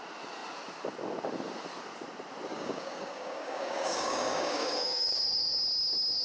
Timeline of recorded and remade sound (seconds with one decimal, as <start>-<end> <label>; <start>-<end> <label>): 0.0-2.5 recorded; 2.5-5.6 remade; 5.6-6.2 recorded